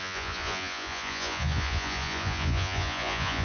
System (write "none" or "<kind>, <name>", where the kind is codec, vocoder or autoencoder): vocoder, Vocos